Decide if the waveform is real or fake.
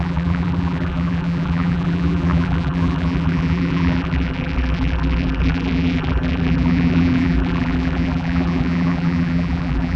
fake